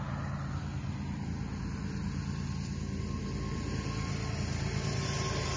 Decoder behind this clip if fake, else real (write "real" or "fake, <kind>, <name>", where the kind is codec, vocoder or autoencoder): real